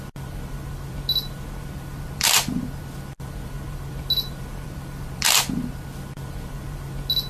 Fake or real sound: fake